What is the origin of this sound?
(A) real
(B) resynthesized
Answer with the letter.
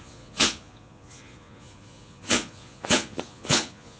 B